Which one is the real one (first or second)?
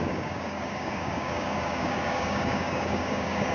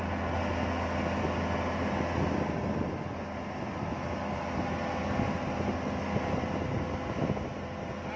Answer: second